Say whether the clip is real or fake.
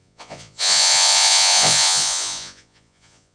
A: fake